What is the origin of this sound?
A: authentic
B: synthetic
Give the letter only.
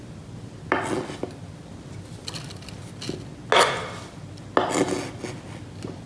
A